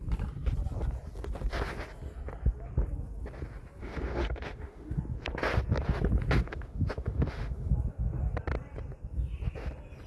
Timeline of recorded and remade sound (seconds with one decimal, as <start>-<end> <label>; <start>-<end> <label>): 0.0-3.8 recorded; 3.8-5.0 remade; 5.0-6.4 recorded; 6.4-7.7 remade; 7.7-10.1 recorded

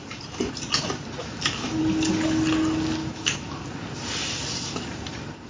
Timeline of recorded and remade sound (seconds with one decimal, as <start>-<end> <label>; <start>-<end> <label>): 0.0-1.2 recorded; 1.2-1.8 remade; 1.8-3.0 recorded; 3.0-3.6 remade; 3.6-5.5 recorded

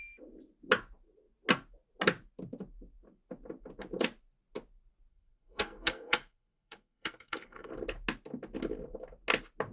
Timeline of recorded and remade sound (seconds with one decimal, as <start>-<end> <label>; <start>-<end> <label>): 0.0-5.1 recorded; 5.1-7.7 remade; 7.7-9.7 recorded

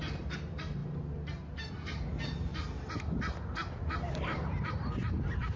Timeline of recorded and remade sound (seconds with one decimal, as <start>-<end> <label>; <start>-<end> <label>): 0.0-0.8 remade; 0.8-1.7 recorded; 1.7-2.5 remade; 2.5-3.8 recorded; 3.8-5.6 remade

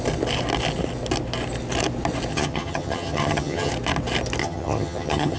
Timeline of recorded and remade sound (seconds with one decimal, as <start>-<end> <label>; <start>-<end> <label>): 0.0-2.3 recorded; 2.3-3.7 remade; 3.7-4.4 recorded; 4.4-5.4 remade

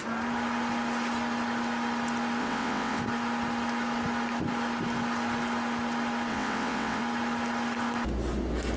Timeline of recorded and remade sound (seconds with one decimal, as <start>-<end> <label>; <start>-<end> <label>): 0.0-2.4 recorded; 2.4-3.0 remade; 3.0-6.3 recorded; 6.3-7.0 remade; 7.0-8.8 recorded

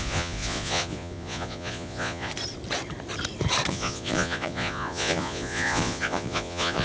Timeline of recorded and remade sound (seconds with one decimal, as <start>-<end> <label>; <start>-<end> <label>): 0.0-2.3 remade; 2.3-3.7 recorded; 3.7-6.8 remade

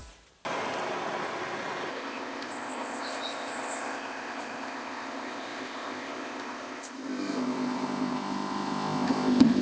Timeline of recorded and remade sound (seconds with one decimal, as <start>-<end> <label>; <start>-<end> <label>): 0.0-1.9 recorded; 1.9-9.6 remade